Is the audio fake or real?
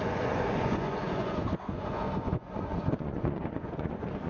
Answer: fake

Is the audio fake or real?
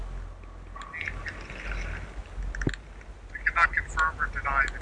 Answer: real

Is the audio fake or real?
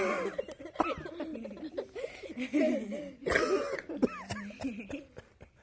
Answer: real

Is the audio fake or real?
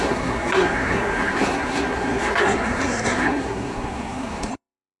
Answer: fake